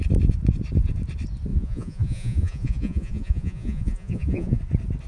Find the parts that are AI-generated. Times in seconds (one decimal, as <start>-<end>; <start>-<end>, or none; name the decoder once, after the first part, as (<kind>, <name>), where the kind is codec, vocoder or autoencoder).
1.5-4.6 (vocoder, Vocos)